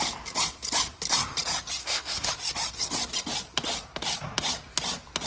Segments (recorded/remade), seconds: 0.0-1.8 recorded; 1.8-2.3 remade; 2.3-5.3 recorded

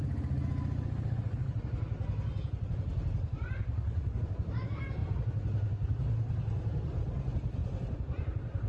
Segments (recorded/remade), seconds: 0.0-8.7 recorded

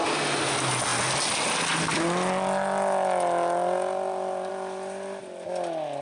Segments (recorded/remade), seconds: 0.0-6.0 recorded

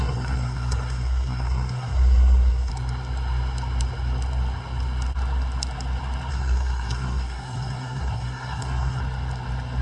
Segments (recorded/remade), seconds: 0.0-2.7 remade; 2.7-6.3 recorded; 6.3-9.0 remade; 9.0-9.8 recorded

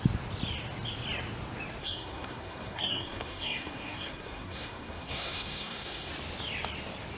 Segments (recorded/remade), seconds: 0.0-1.8 recorded; 1.8-6.1 remade; 6.1-7.2 recorded

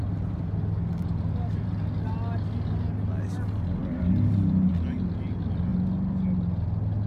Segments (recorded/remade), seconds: 0.0-7.1 recorded

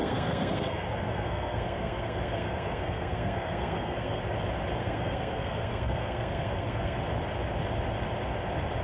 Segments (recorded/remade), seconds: 0.0-4.2 remade; 4.2-4.8 recorded; 4.8-7.0 remade; 7.0-8.8 recorded